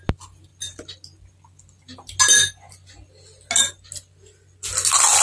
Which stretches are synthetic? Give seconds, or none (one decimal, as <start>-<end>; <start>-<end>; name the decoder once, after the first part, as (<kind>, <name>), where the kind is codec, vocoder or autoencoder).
none